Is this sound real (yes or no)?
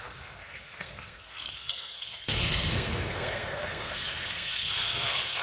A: no